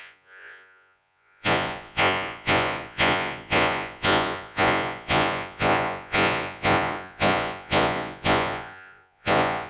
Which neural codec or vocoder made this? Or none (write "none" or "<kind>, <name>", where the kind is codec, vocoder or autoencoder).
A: vocoder, Vocos